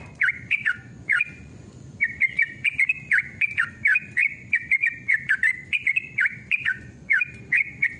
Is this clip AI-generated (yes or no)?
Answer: yes